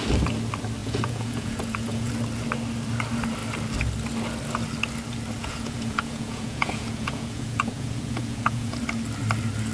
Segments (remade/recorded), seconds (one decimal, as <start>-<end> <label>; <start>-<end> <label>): 0.0-0.8 recorded; 0.8-2.1 remade; 2.1-5.4 recorded; 5.4-8.8 remade; 8.8-9.7 recorded